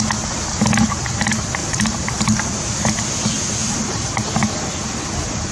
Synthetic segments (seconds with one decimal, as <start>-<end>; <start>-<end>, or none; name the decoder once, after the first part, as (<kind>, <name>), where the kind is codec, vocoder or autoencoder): 1.6-2.2 (vocoder, BigVGAN v2); 3.6-4.5